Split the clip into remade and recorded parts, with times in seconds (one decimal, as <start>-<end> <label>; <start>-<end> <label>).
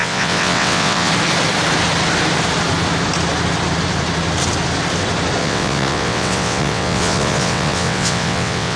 0.0-1.1 remade; 1.1-5.4 recorded; 5.4-8.8 remade